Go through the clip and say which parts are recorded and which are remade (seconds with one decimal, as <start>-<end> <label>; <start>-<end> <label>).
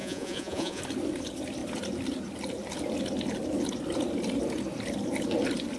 0.0-0.8 remade; 0.8-5.8 recorded